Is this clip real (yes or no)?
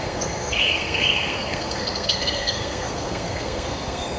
no